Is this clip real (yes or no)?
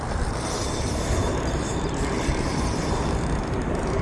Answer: no